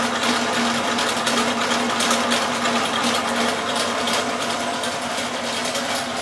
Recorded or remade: recorded